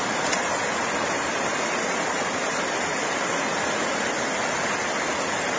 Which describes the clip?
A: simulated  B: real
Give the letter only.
B